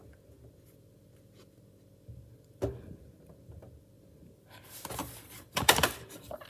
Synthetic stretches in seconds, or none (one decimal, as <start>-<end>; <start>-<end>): 5.0-6.5